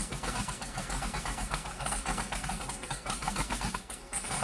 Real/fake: fake